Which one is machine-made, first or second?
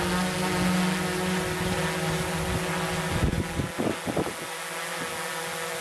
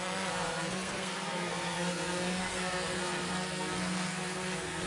second